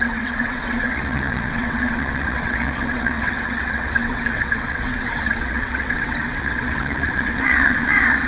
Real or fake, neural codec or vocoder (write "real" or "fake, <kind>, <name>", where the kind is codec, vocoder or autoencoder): fake, vocoder, WaveNeXt